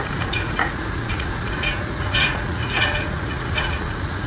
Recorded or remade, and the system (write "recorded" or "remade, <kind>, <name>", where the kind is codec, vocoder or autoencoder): remade, vocoder, Vocos